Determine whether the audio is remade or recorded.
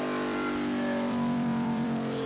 remade